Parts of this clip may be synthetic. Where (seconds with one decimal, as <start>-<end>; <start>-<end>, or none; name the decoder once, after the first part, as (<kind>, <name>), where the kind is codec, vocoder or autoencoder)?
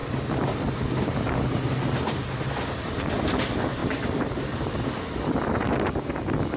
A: none